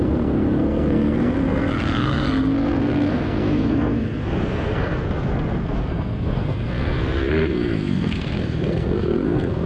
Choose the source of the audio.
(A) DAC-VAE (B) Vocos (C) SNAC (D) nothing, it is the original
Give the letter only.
C